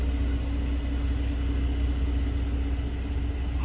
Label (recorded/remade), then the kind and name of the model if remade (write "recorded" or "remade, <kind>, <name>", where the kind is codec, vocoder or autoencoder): recorded